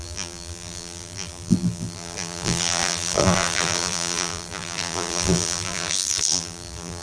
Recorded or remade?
remade